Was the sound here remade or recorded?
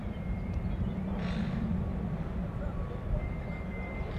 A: recorded